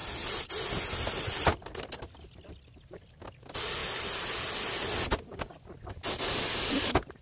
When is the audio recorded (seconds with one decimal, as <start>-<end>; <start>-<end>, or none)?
0.0-7.2